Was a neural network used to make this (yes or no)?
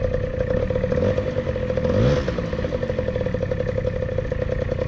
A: no